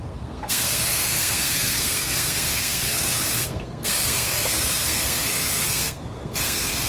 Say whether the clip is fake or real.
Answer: fake